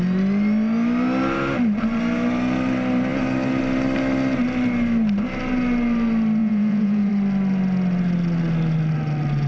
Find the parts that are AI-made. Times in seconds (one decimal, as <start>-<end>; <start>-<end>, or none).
6.4-7.1